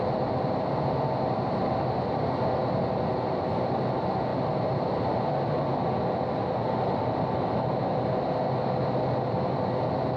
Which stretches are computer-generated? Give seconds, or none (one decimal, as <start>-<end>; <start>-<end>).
none